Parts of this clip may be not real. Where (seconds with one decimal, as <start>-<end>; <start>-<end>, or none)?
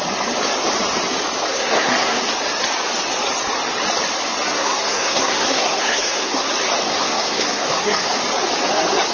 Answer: 1.5-2.2; 4.6-6.5; 6.9-8.2